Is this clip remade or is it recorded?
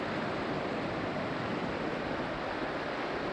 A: recorded